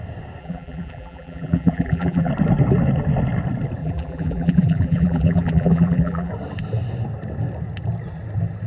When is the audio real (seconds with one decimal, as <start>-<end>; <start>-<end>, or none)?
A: 0.0-0.4; 2.3-3.8; 6.3-8.7